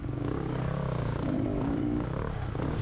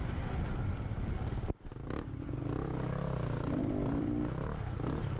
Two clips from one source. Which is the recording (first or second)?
second